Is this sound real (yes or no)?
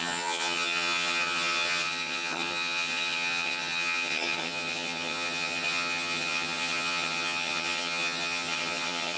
no